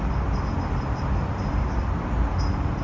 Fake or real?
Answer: real